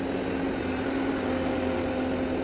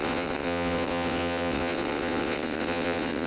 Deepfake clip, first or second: second